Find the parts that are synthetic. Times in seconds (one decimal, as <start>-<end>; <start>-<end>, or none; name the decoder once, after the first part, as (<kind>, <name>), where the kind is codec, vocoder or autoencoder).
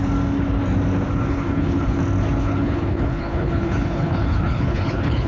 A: 1.3-2.0 (codec, HILCodec); 2.4-5.3